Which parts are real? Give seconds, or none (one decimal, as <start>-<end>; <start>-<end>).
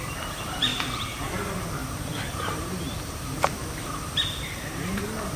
0.0-0.7; 1.2-1.8; 5.0-5.4